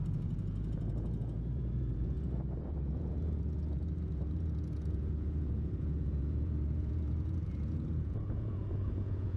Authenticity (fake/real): fake